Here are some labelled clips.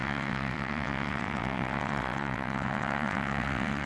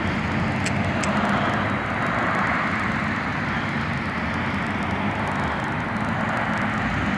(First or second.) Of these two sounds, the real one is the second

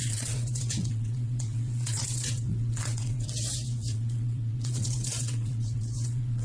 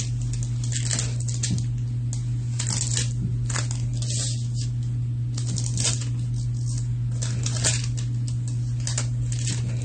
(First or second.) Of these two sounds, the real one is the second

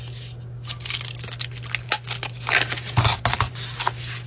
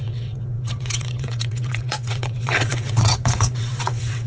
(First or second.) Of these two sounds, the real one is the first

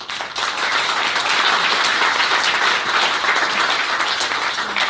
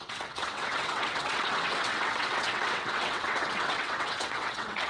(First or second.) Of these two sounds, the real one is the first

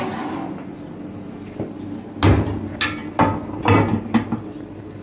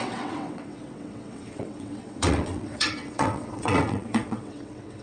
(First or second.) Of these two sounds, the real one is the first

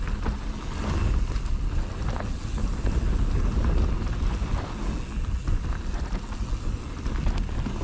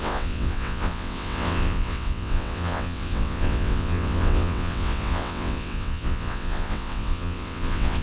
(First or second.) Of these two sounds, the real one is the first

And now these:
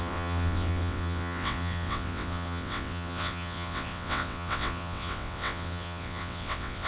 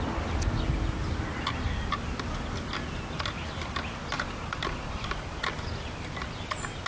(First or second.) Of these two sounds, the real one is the second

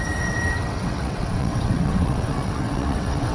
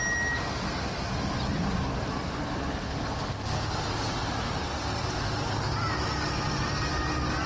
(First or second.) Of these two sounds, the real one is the second